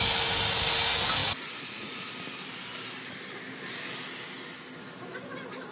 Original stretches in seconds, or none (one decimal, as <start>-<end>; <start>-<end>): 0.0-1.2; 2.1-5.7

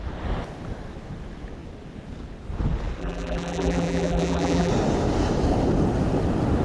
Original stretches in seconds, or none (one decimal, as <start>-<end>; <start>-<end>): 0.0-3.0; 4.7-6.6

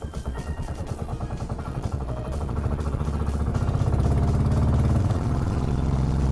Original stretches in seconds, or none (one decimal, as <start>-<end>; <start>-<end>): 1.1-1.6; 3.5-5.0

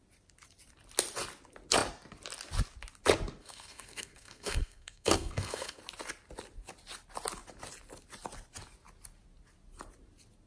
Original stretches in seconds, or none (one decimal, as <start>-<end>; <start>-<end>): 0.0-3.4; 5.8-10.5

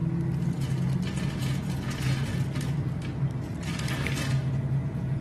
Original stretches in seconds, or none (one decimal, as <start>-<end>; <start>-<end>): 0.0-1.3; 2.3-4.5

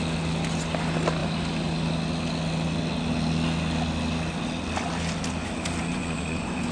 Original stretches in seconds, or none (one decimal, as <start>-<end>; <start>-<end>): 0.0-5.9

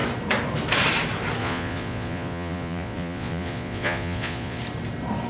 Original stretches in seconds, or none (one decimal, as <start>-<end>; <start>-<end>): 0.0-1.4; 4.6-5.3